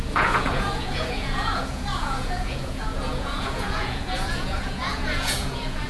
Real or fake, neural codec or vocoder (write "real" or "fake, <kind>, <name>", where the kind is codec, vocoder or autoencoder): fake, vocoder, Vocos